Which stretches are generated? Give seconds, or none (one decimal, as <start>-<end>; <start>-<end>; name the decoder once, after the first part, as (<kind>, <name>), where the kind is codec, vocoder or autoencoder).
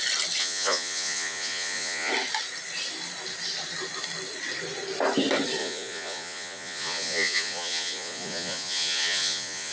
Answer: 0.4-2.1 (vocoder, Vocos); 5.6-9.7